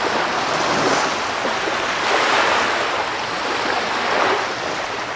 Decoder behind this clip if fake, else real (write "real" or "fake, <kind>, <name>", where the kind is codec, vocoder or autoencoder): real